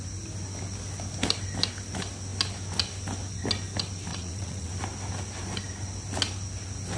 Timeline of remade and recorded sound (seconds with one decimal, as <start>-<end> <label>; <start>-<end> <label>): 0.0-4.1 recorded; 4.1-4.7 remade; 4.7-7.0 recorded